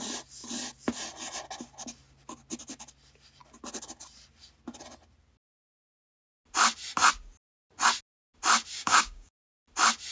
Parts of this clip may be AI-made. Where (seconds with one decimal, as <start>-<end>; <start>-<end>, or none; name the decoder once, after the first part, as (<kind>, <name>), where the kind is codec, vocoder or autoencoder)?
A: 8.7-9.3 (codec, DAC)